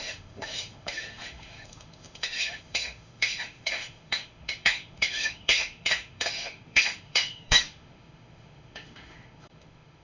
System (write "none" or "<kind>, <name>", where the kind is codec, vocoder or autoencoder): autoencoder, DAC-VAE